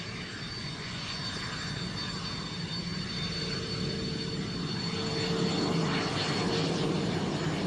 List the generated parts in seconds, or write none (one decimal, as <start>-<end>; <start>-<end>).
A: 0.6-1.2